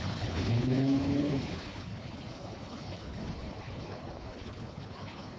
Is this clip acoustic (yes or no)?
no